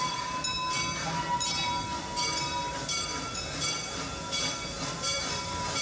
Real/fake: real